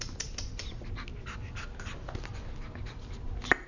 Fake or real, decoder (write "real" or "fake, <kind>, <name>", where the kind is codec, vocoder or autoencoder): real